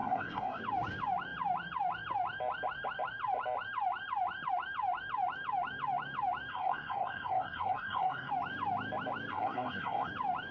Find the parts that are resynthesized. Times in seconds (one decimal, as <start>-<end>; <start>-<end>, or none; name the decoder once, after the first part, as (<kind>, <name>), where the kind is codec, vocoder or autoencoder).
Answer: 0.0-0.6 (codec, SNAC); 6.5-8.3; 9.3-10.1